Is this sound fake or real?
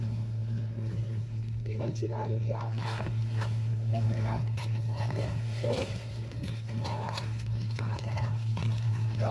fake